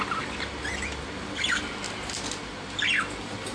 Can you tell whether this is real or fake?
real